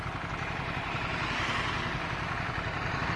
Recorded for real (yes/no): yes